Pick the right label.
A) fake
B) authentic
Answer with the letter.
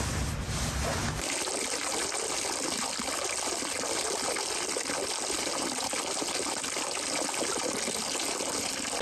B